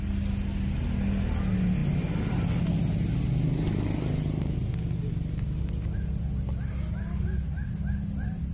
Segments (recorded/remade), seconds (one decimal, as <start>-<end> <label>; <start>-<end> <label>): 0.0-8.5 recorded